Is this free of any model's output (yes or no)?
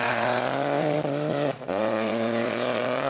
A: no